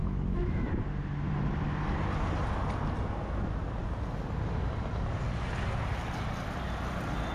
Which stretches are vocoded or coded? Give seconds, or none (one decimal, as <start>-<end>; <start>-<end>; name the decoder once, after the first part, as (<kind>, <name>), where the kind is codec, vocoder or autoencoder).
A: 0.0-0.7 (autoencoder, DAC-VAE)